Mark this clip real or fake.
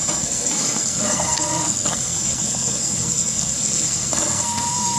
fake